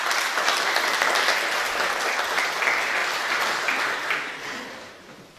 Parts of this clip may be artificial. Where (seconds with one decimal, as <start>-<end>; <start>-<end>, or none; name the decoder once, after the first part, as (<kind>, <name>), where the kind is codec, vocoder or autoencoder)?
none